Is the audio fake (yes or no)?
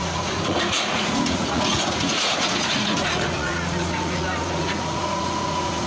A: yes